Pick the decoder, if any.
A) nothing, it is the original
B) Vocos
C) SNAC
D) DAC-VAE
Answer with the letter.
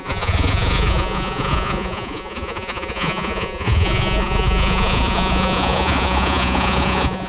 B